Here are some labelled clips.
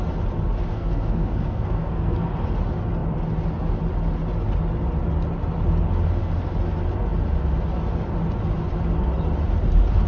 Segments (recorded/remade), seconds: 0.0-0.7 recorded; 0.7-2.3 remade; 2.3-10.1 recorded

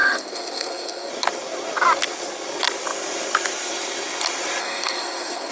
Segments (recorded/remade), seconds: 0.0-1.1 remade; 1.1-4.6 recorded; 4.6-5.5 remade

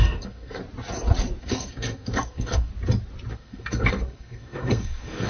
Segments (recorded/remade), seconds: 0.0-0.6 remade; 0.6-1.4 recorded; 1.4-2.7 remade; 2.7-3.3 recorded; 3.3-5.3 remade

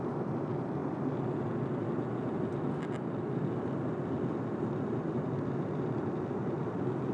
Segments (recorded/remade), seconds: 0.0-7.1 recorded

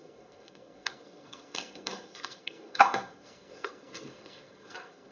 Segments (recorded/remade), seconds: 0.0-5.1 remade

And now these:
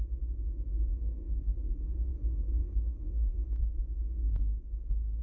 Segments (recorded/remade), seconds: 0.0-0.9 recorded; 0.9-2.1 remade; 2.1-2.6 recorded; 2.6-5.2 remade